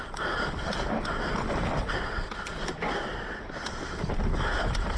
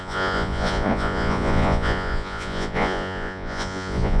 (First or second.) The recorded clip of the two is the first